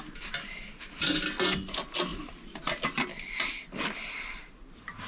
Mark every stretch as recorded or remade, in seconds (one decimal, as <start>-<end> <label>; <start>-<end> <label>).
0.0-5.1 recorded